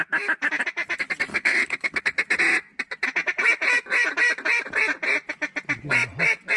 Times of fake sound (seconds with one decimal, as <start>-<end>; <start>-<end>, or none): 1.3-2.0